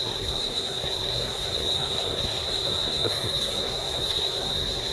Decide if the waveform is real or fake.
fake